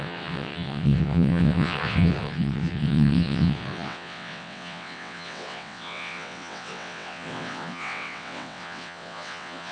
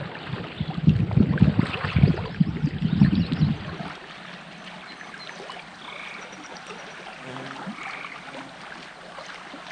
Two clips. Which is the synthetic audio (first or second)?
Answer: first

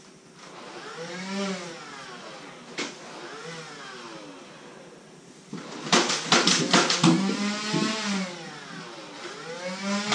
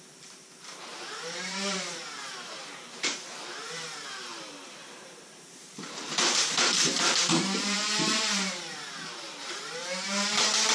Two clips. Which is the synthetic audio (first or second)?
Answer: second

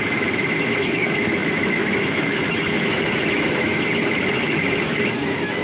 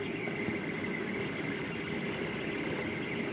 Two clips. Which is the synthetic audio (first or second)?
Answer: first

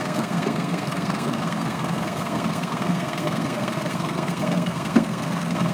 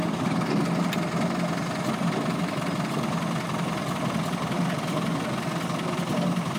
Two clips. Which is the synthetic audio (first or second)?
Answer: first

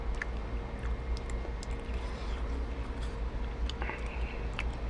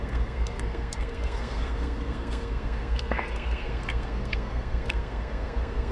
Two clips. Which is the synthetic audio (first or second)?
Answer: second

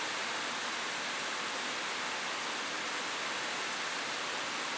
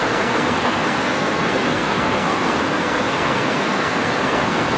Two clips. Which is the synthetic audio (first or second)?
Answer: second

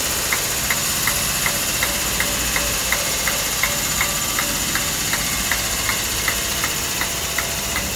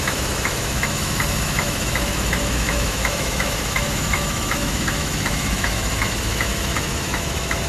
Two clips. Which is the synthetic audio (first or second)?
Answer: second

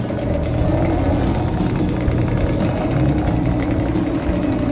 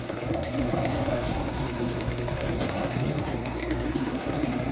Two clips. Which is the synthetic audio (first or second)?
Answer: second